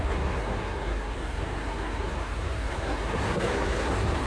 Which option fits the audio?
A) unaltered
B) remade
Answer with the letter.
B